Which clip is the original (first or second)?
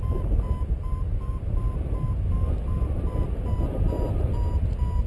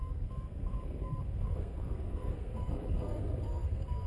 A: first